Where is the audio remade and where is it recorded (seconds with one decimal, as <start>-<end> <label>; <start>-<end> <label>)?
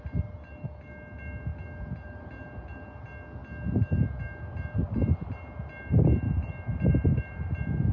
0.0-7.9 recorded